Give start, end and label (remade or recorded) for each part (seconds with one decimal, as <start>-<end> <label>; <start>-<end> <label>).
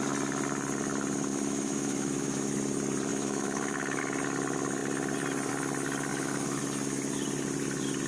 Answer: 0.0-1.3 recorded; 1.3-2.5 remade; 2.5-3.1 recorded; 3.1-4.0 remade; 4.0-6.1 recorded; 6.1-6.6 remade; 6.6-8.1 recorded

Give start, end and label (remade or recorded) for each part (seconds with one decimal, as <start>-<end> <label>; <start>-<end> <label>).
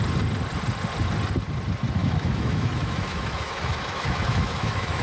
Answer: 0.0-2.0 recorded; 2.0-5.0 remade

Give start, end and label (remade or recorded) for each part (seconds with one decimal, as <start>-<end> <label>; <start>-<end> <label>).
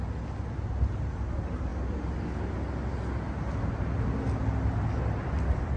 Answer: 0.0-5.8 recorded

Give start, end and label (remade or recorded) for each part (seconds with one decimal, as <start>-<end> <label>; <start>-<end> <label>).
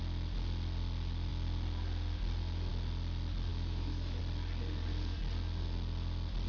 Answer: 0.0-3.5 recorded; 3.5-4.2 remade; 4.2-6.5 recorded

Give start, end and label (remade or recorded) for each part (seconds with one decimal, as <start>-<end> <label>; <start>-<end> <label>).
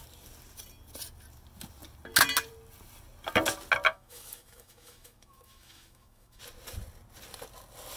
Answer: 0.0-3.9 recorded; 3.9-6.4 remade; 6.4-8.0 recorded